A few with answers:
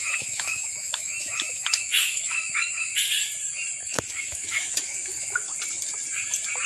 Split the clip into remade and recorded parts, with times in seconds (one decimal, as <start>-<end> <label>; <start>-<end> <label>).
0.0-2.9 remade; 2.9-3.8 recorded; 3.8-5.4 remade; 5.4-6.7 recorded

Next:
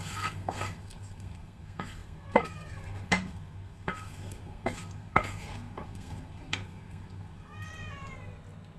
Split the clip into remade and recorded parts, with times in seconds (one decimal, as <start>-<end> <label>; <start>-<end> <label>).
0.0-7.7 remade; 7.7-8.8 recorded

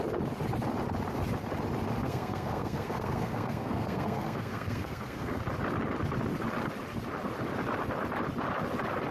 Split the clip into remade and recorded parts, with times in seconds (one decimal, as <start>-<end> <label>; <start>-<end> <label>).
0.0-2.0 recorded; 2.0-5.4 remade; 5.4-9.1 recorded

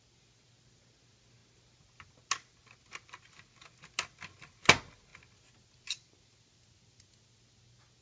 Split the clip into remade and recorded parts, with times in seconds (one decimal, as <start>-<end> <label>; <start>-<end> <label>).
0.0-8.0 recorded